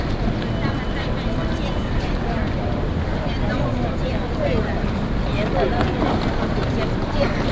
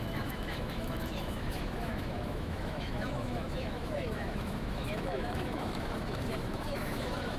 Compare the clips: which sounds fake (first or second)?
second